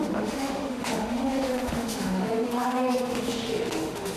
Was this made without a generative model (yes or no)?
no